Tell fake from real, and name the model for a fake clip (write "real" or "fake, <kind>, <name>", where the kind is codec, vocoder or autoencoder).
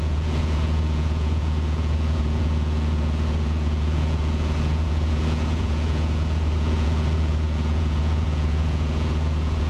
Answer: fake, vocoder, Vocos